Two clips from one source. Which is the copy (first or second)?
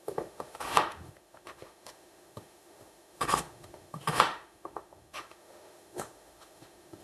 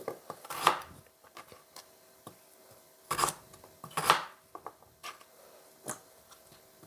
first